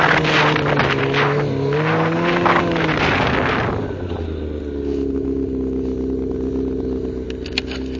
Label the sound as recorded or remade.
recorded